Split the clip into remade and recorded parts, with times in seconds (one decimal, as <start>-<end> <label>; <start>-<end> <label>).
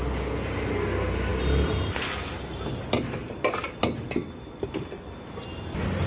0.0-1.3 recorded; 1.3-5.0 remade; 5.0-6.1 recorded